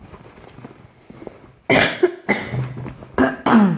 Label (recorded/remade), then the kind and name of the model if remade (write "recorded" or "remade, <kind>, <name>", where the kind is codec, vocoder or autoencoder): recorded